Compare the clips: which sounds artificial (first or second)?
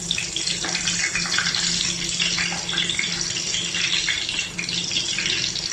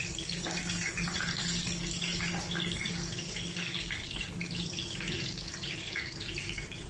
second